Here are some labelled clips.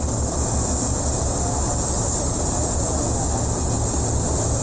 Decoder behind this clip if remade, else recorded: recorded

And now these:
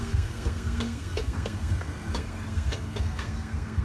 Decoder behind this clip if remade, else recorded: remade, codec, SNAC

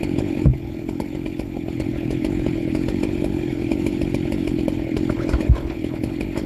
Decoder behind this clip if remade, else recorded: remade, codec, HILCodec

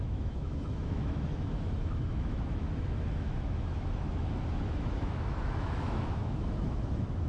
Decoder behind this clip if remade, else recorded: remade, autoencoder, DAC-VAE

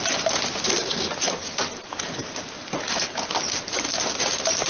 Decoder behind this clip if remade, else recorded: recorded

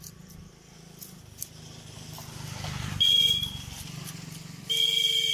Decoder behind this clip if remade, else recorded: recorded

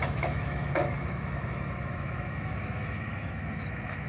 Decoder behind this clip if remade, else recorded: remade, autoencoder, DAC-VAE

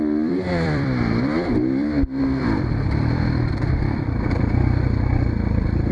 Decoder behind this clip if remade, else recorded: remade, vocoder, BigVGAN v2